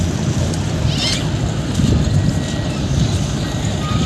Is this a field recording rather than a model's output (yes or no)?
yes